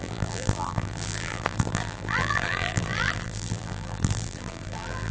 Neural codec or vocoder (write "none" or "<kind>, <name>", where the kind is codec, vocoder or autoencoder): vocoder, BigVGAN v2